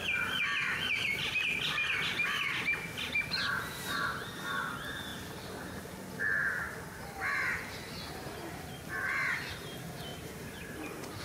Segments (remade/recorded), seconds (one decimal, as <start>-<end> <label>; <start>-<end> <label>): 0.0-10.1 recorded; 10.1-11.2 remade